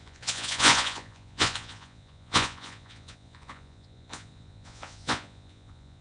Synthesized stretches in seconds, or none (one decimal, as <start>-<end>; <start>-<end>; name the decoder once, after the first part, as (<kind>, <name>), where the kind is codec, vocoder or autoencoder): 0.0-6.0 (vocoder, Vocos)